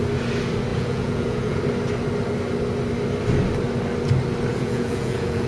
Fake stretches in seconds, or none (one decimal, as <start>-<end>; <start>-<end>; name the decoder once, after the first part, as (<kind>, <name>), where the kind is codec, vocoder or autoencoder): 0.7-1.6 (vocoder, Vocos); 4.5-5.5